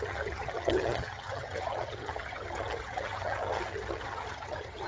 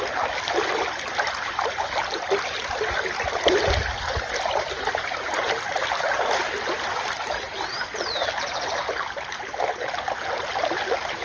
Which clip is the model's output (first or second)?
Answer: first